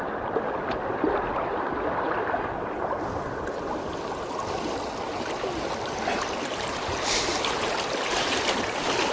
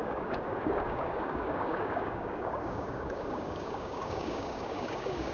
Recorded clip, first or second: first